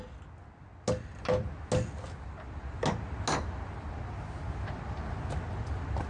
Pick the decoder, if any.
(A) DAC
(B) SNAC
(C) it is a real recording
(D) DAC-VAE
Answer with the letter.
C